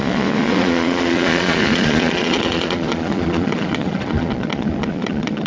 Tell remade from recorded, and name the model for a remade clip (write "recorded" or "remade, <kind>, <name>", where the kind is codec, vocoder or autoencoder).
remade, vocoder, Vocos